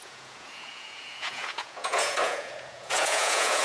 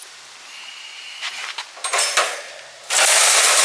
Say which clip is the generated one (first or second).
first